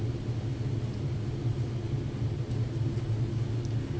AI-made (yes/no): no